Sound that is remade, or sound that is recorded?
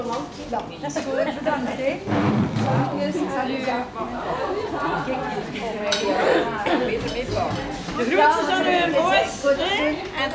recorded